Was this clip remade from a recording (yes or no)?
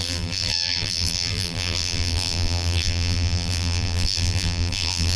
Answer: yes